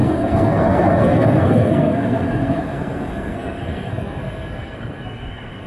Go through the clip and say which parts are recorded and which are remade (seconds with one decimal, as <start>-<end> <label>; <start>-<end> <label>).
0.0-5.7 remade